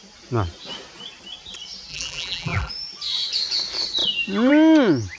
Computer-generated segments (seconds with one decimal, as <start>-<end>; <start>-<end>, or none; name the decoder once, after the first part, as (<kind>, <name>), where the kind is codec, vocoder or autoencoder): 1.9-2.7 (vocoder, BigVGAN v2)